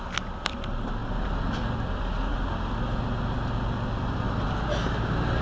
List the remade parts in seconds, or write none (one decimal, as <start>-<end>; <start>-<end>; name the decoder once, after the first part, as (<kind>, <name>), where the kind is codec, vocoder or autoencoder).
none